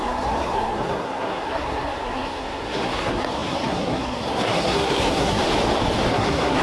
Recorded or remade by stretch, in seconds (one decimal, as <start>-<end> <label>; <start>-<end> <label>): 0.0-5.4 remade; 5.4-6.1 recorded; 6.1-6.6 remade